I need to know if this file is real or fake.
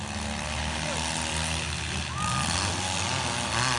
real